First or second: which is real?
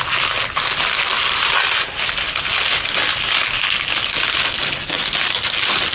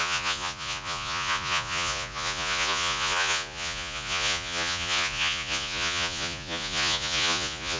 first